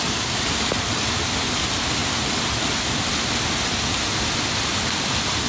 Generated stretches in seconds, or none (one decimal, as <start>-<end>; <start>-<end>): none